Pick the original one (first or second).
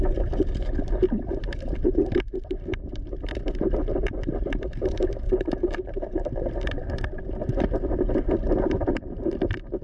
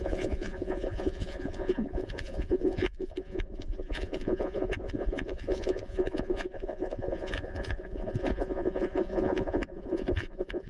first